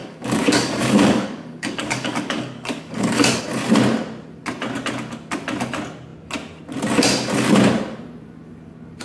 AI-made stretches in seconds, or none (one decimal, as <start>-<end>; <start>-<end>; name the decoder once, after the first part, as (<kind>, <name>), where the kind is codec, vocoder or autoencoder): 0.0-3.4 (codec, DAC)